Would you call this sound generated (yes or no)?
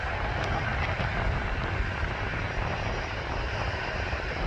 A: no